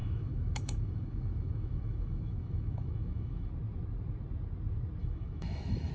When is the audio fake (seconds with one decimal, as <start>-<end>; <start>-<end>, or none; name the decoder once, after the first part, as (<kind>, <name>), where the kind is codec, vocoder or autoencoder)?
0.0-3.5 (autoencoder, DAC-VAE); 5.0-5.9